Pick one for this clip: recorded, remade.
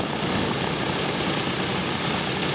recorded